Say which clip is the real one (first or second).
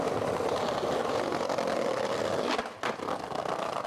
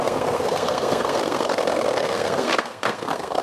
first